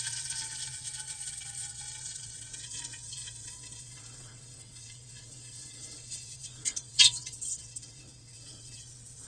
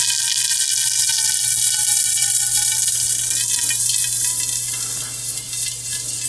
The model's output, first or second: first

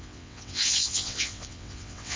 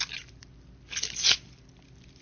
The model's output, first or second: first